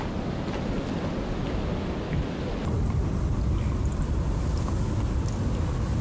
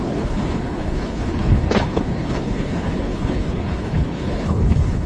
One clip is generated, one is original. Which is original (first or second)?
first